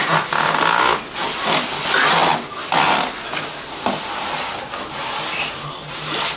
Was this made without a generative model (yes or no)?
yes